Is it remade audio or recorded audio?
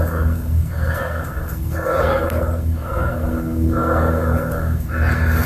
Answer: remade